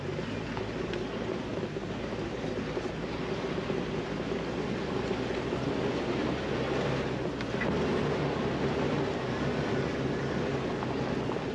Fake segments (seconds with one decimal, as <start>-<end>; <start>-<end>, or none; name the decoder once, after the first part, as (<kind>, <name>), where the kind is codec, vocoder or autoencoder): none